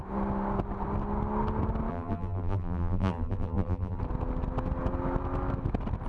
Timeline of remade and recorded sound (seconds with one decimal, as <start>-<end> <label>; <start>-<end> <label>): 0.0-1.9 recorded; 1.9-4.0 remade; 4.0-6.1 recorded